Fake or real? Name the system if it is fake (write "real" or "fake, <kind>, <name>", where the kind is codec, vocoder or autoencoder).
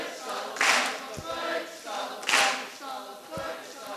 real